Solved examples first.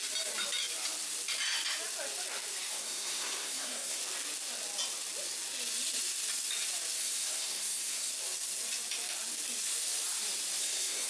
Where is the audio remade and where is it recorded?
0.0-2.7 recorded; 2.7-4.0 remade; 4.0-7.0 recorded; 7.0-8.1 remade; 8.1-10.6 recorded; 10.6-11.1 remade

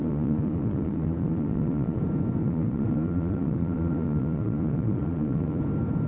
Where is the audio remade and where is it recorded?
0.0-2.0 remade; 2.0-2.4 recorded; 2.4-5.6 remade; 5.6-6.1 recorded

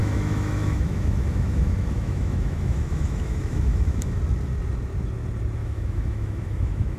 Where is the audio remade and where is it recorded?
0.0-4.2 remade; 4.2-5.6 recorded; 5.6-7.0 remade

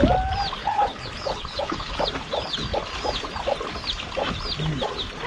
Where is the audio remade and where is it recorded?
0.0-0.6 recorded; 0.6-2.0 remade; 2.0-5.3 recorded

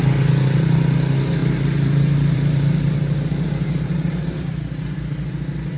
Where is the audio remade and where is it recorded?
0.0-1.4 recorded; 1.4-4.6 remade; 4.6-5.8 recorded

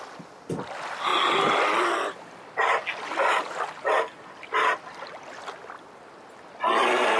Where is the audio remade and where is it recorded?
0.0-7.2 recorded

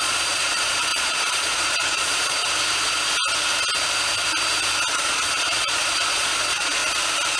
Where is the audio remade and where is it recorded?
0.0-2.4 remade; 2.4-4.9 recorded; 4.9-6.8 remade; 6.8-7.4 recorded

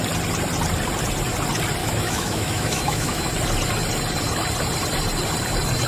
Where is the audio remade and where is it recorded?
0.0-1.8 recorded; 1.8-3.3 remade; 3.3-5.9 recorded